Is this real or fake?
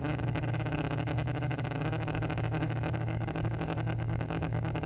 fake